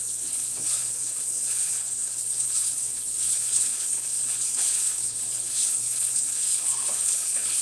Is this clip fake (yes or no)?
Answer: yes